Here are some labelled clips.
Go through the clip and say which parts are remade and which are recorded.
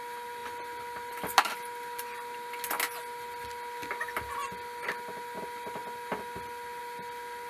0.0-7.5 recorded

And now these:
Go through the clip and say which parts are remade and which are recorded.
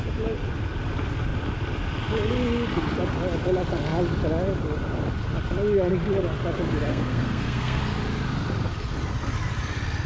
0.0-6.9 recorded; 6.9-7.8 remade; 7.8-10.1 recorded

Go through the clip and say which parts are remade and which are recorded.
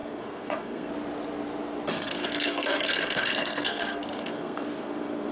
0.0-0.9 remade; 0.9-1.9 recorded; 1.9-5.3 remade